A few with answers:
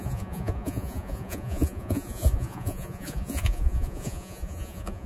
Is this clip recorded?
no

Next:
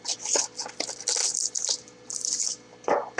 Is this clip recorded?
yes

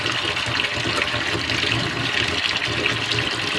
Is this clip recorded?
yes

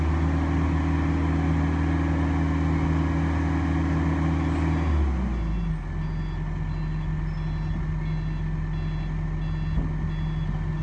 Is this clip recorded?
yes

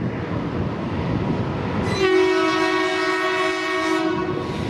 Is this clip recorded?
yes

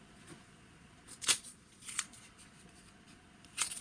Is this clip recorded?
no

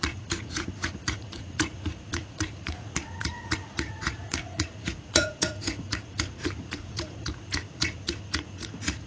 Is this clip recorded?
no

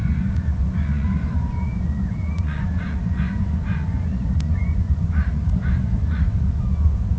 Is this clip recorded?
no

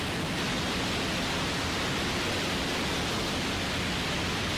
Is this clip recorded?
yes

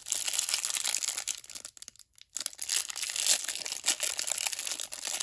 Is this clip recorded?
yes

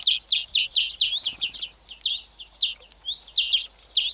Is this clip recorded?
yes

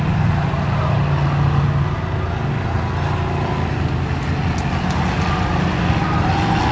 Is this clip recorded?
yes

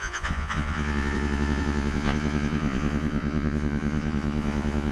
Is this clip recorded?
no